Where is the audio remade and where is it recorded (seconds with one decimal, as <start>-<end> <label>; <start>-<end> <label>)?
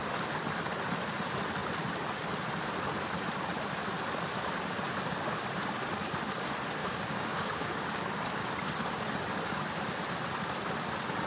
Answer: 0.0-6.8 recorded; 6.8-7.9 remade; 7.9-11.3 recorded